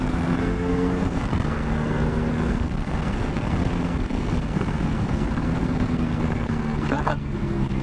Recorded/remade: remade